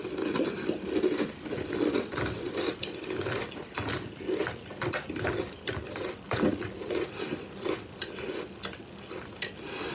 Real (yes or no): yes